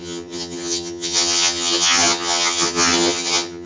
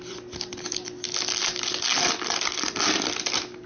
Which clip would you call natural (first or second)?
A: second